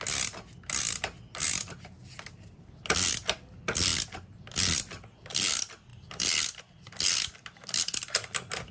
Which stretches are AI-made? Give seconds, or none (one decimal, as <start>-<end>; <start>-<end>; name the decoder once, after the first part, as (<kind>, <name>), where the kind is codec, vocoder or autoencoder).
2.0-2.7 (vocoder, BigVGAN v2); 5.9-6.6